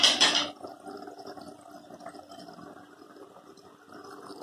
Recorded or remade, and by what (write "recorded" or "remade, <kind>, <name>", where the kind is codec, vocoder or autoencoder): recorded